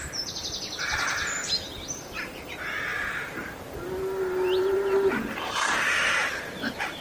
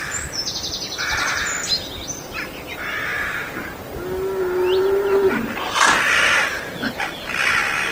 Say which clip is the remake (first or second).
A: first